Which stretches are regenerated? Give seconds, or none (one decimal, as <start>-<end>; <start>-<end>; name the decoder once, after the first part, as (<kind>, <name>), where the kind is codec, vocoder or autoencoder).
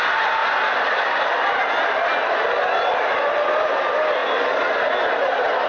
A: none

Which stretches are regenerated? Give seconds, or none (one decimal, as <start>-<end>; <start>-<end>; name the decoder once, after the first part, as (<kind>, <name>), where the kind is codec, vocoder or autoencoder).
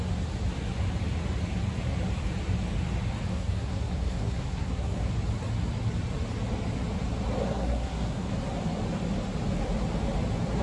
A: 3.3-5.1 (codec, SNAC); 7.4-8.3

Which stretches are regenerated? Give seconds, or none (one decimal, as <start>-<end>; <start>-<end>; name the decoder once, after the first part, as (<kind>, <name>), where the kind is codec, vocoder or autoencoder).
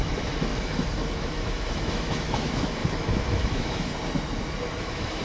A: 0.0-3.9 (autoencoder, DAC-VAE); 4.8-5.2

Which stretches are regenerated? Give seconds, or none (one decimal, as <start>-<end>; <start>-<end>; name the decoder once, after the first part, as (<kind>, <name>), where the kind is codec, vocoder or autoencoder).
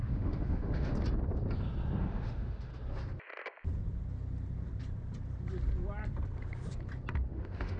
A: 0.0-0.9 (autoencoder, DAC-VAE); 2.0-2.7; 7.3-7.8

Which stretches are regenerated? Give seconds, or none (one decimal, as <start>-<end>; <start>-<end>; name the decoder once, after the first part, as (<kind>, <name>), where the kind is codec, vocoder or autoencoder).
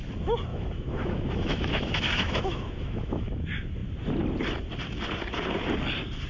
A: 0.5-3.4 (autoencoder, DAC-VAE)